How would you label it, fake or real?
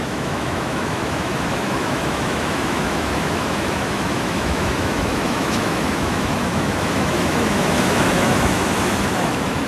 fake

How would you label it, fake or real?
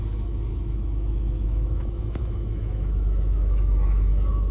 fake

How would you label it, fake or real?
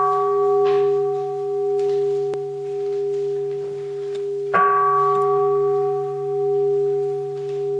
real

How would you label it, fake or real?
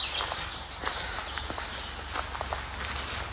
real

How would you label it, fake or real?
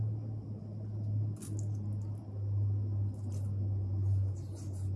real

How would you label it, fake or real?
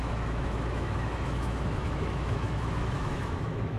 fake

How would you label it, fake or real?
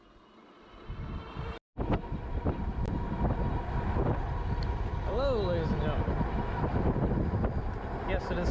real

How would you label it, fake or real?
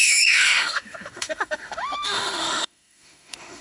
fake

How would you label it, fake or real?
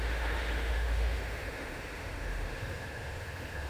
fake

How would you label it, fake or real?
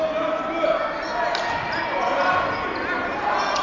real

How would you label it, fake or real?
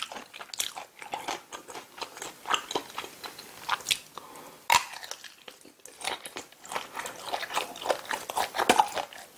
real